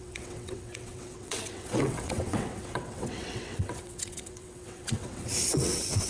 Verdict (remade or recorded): remade